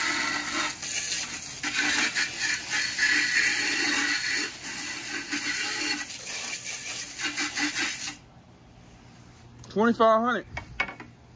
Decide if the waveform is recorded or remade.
recorded